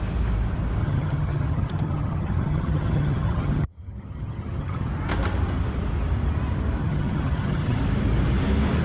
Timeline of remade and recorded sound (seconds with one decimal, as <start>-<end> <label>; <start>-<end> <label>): 0.0-0.8 recorded; 0.8-4.9 remade; 4.9-6.8 recorded; 6.8-7.8 remade; 7.8-8.8 recorded